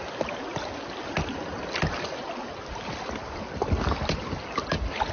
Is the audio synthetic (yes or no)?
no